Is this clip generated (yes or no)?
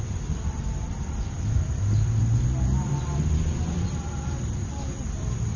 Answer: yes